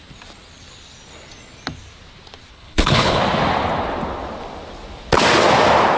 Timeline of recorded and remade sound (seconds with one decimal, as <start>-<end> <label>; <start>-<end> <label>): 0.0-2.5 recorded; 2.5-3.2 remade; 3.2-6.0 recorded